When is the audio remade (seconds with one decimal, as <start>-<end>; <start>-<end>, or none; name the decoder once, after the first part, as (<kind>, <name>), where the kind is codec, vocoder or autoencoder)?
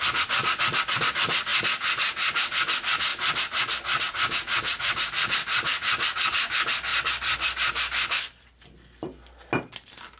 none